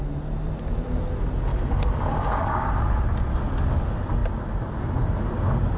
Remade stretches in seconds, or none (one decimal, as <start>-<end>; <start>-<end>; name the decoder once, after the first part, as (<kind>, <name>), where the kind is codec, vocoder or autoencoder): 1.5-2.7 (codec, DAC)